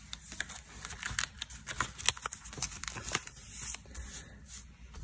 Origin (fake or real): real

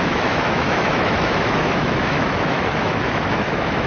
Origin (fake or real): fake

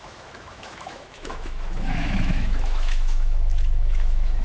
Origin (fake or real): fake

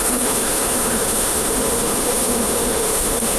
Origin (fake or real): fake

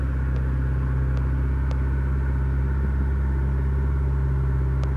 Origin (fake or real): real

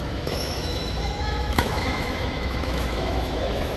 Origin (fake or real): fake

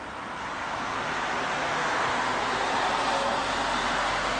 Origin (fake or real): real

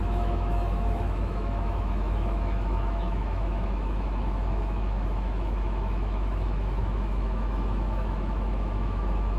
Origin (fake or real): fake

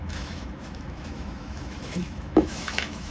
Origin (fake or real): fake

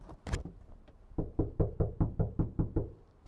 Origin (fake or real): real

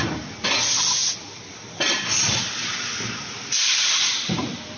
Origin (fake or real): real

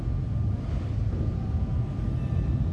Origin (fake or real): real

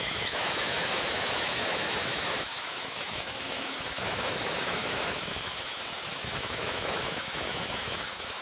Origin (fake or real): fake